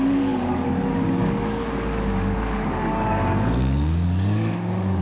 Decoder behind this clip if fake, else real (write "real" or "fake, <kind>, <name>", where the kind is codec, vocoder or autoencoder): fake, codec, DAC